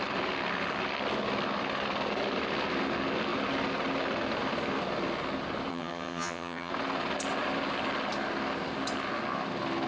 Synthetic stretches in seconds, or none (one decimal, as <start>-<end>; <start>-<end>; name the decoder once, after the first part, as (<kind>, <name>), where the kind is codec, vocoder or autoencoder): 5.7-6.7 (vocoder, HiFi-GAN)